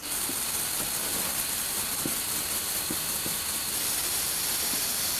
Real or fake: real